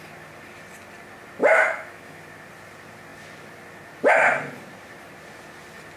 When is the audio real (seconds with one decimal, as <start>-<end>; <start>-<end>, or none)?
0.0-1.4; 2.2-6.0